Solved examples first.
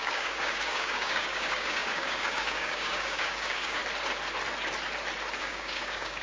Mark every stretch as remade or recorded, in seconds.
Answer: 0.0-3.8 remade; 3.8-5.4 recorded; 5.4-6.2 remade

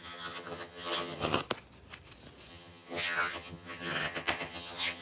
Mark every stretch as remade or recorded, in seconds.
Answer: 0.0-1.4 remade; 1.4-2.5 recorded; 2.5-5.0 remade

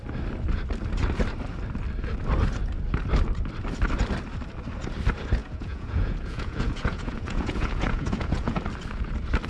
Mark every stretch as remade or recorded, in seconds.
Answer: 0.0-5.4 recorded; 5.4-8.6 remade; 8.6-9.5 recorded

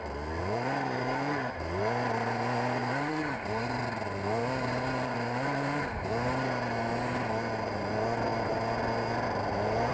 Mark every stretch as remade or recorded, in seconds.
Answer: 0.0-0.4 recorded; 0.4-1.8 remade; 1.8-2.8 recorded; 2.8-3.8 remade; 3.8-4.4 recorded; 4.4-6.1 remade; 6.1-9.9 recorded